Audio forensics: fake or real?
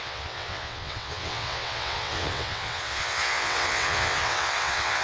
fake